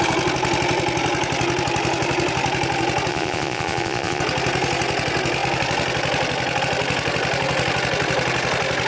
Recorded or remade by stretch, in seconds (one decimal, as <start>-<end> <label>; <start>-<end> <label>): 0.0-3.1 recorded; 3.1-4.2 remade; 4.2-8.9 recorded